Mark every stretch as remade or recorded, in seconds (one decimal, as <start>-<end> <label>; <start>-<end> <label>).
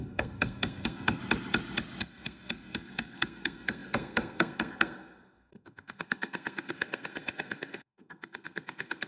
0.0-1.2 remade; 1.2-2.0 recorded; 2.0-9.1 remade